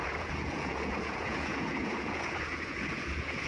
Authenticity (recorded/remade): remade